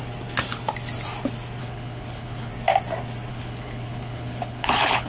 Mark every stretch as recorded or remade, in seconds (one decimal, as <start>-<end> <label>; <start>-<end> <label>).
0.0-1.6 recorded; 1.6-2.5 remade; 2.5-3.3 recorded; 3.3-5.1 remade